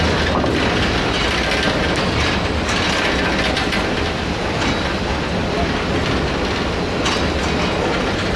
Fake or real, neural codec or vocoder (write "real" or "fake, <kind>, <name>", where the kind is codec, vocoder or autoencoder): real